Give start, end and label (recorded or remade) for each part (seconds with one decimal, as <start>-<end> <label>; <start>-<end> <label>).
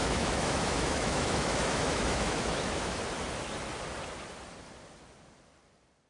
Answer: 0.0-3.0 remade; 3.0-6.1 recorded